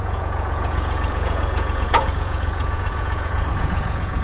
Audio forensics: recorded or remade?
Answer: remade